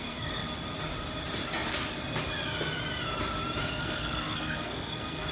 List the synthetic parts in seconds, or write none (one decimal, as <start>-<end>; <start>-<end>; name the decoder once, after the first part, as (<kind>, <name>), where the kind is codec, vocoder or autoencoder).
0.0-0.4 (codec, SNAC); 3.6-5.3